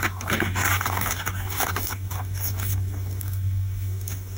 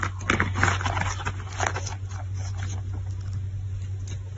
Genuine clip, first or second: second